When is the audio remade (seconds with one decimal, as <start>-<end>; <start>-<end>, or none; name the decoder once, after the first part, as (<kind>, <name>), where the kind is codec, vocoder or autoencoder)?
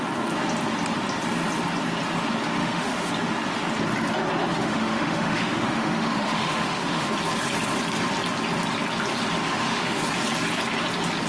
2.6-3.1 (autoencoder, DAC-VAE); 4.5-7.1; 9.4-10.0